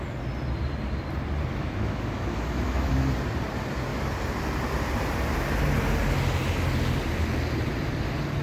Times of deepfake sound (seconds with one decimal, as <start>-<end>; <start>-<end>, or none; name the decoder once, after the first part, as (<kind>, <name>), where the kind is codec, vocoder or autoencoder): 1.5-2.9 (autoencoder, DAC-VAE)